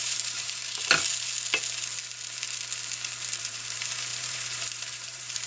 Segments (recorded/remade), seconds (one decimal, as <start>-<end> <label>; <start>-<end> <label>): 0.0-0.6 remade; 0.6-3.4 recorded; 3.4-5.5 remade